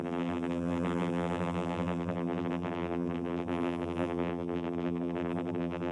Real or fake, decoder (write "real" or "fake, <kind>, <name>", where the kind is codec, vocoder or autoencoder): fake, vocoder, BigVGAN v2